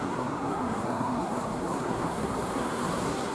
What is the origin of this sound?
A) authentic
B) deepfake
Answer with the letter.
B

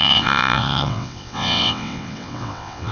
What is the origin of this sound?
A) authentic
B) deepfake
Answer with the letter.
B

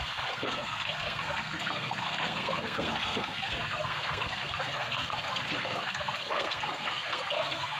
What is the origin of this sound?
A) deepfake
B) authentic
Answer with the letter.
A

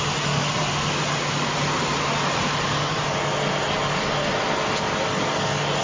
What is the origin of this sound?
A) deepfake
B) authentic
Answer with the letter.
B